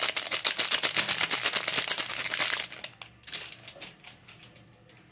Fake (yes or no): no